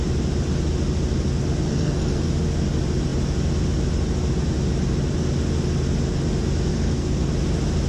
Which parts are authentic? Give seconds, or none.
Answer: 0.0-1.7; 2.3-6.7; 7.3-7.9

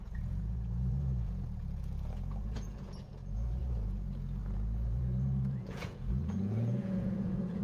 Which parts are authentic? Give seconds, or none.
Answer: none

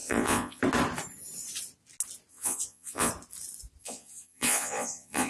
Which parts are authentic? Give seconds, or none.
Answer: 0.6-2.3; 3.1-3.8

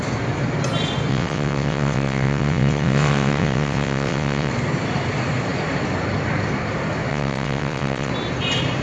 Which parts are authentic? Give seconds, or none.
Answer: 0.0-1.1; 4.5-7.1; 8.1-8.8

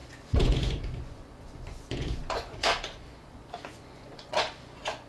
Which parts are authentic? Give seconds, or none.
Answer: none

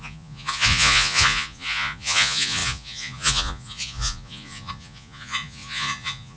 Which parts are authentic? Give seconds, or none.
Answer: none

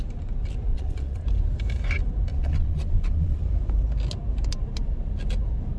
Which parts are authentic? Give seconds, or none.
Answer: 0.0-0.7; 1.2-2.3; 3.4-5.8